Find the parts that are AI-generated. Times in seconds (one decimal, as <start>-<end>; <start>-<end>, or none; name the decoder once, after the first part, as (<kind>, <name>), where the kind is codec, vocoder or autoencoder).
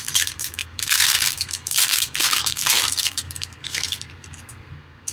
0.0-5.1 (codec, SNAC)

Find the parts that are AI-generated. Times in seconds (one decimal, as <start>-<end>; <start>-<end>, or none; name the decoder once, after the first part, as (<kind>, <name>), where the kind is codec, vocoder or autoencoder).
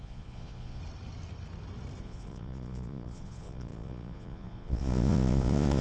0.0-0.8 (vocoder, Vocos); 2.0-5.8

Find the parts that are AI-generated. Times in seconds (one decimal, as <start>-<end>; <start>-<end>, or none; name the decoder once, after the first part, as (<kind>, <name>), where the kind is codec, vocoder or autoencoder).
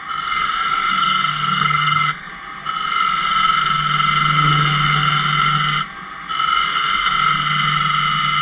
0.7-2.3 (codec, SNAC)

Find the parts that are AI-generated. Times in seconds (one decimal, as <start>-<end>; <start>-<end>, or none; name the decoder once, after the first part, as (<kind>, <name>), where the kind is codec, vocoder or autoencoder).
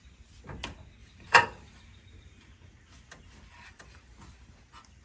1.0-1.8 (vocoder, BigVGAN v2); 3.5-4.0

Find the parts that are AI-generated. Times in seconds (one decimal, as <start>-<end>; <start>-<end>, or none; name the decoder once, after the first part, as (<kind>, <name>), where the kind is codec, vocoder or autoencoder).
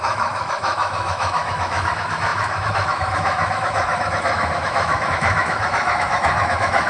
0.0-6.9 (autoencoder, DAC-VAE)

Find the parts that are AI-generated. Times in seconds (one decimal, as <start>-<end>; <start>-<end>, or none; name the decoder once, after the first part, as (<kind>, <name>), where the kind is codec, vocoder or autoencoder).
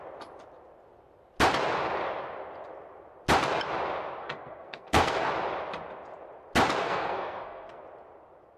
4.2-5.3 (codec, SNAC); 6.8-7.8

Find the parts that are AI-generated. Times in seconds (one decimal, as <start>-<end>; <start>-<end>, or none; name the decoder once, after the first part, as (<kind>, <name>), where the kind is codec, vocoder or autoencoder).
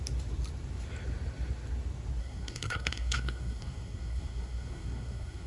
2.2-5.5 (codec, SNAC)